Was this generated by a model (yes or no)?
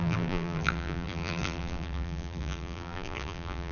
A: yes